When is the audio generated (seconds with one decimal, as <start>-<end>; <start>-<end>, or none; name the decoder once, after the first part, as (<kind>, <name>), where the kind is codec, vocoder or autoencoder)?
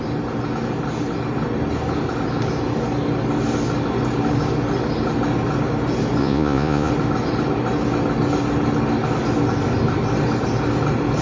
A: 6.2-6.9 (vocoder, Vocos)